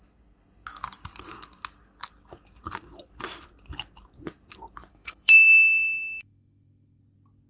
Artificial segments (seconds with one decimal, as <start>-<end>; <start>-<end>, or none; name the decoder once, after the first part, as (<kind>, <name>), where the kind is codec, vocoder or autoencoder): 4.9-7.0 (autoencoder, DAC-VAE)